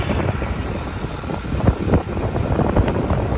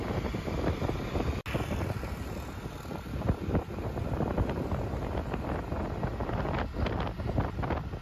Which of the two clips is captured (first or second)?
second